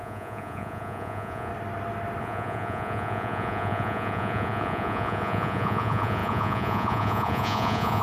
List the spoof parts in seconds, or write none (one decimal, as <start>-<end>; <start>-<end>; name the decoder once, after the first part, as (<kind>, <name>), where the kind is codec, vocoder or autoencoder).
0.0-1.5 (vocoder, Vocos); 2.2-8.0